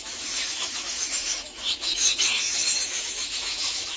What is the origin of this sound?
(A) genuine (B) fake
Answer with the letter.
B